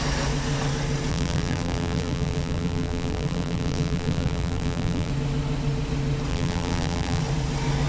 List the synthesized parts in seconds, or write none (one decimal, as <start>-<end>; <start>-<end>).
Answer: 1.1-5.1; 6.3-7.2